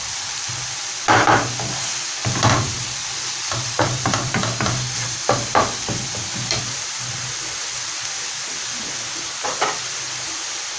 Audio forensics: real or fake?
fake